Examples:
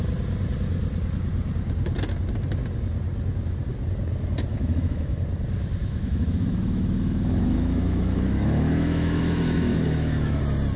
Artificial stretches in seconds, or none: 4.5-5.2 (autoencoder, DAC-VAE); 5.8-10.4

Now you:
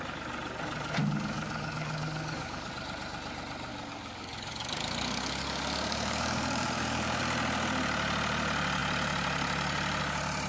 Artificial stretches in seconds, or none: 1.0-2.7 (codec, DAC); 3.7-7.2

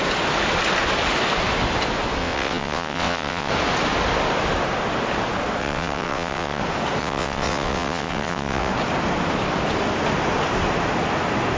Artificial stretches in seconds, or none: 2.2-3.5 (vocoder, WaveNeXt); 5.6-6.6; 7.0-8.7

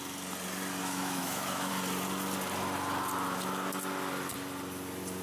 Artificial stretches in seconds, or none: 0.8-1.7 (autoencoder, DAC-VAE)

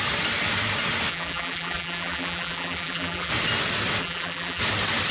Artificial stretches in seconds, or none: 1.1-3.3 (vocoder, BigVGAN v2); 4.0-4.6

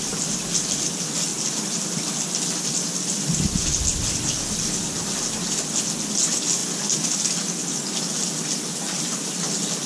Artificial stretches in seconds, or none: none

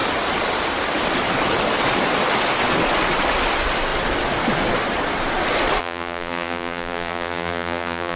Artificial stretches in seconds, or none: 5.8-8.2 (vocoder, BigVGAN v2)

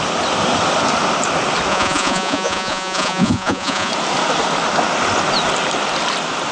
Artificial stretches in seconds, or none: 1.7-3.9 (vocoder, Vocos)